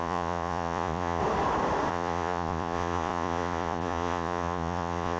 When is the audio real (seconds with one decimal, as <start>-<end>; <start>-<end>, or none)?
1.2-1.9